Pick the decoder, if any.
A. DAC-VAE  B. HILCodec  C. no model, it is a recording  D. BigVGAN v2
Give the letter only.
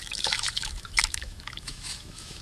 A